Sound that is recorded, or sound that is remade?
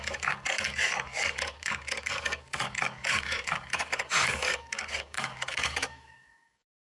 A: remade